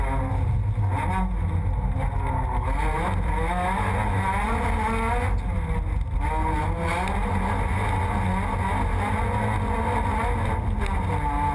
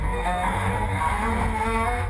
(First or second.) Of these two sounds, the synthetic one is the second